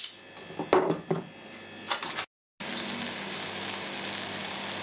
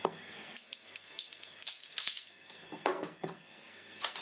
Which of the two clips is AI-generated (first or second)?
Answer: second